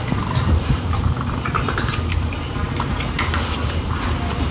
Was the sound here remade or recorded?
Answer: remade